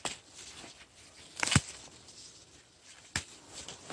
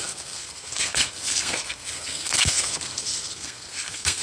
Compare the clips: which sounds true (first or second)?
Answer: first